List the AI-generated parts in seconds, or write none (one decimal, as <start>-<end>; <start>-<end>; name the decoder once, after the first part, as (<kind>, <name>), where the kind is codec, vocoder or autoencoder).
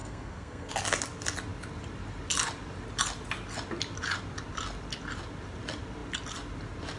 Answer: 0.0-0.7 (codec, SNAC)